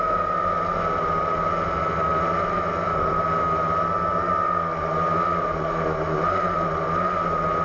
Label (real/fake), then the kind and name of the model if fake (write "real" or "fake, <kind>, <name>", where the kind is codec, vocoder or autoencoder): real